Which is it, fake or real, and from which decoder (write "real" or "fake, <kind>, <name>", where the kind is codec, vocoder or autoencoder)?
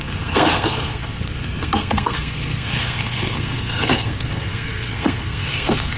fake, codec, SNAC